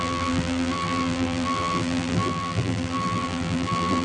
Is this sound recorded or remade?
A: remade